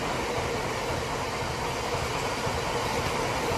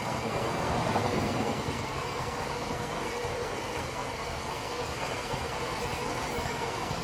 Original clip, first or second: first